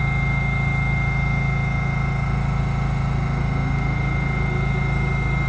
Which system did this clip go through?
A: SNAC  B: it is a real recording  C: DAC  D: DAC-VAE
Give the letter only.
B